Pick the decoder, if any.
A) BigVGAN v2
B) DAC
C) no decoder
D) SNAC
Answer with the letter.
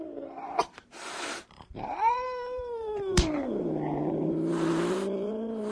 A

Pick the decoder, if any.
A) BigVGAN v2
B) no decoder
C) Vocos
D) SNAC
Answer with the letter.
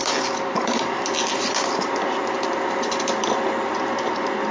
B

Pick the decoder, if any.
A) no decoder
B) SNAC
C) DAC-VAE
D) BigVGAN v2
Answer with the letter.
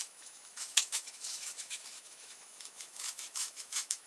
C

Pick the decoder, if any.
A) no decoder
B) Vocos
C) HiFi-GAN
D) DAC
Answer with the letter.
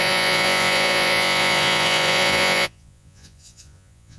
B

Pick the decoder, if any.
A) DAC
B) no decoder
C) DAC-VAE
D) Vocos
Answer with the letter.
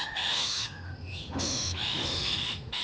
C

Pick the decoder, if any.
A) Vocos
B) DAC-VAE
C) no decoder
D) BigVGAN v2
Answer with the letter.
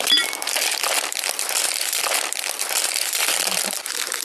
D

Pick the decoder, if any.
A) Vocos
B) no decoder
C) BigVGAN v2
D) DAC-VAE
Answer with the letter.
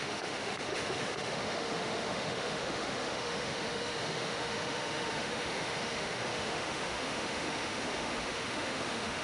D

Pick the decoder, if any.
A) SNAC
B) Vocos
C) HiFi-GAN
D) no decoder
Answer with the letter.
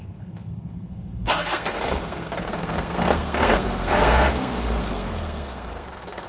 A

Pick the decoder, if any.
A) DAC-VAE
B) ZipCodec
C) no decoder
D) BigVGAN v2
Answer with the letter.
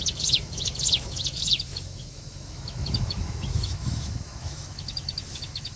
A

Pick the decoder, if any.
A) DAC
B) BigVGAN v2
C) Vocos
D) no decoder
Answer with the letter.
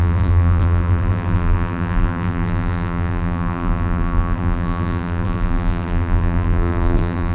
B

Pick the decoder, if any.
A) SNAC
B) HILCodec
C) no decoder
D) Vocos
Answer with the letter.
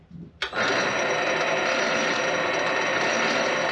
C